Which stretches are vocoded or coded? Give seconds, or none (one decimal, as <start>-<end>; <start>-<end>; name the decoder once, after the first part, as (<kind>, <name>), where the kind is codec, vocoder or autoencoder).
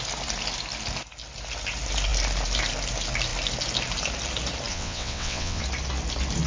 4.7-5.6 (vocoder, WaveNeXt)